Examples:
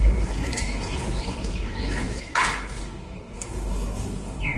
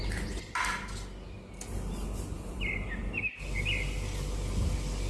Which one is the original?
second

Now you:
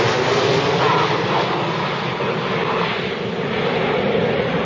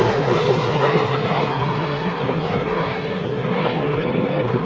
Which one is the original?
first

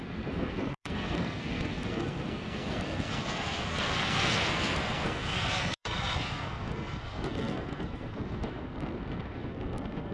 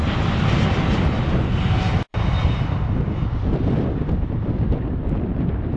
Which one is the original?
second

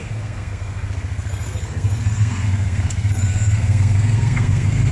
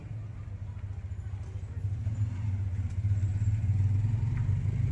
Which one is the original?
second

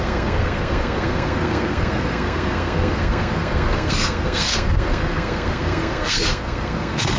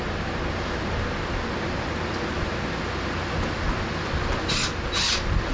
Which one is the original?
second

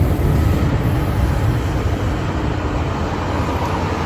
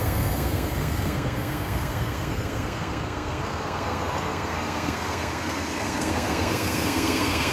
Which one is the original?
first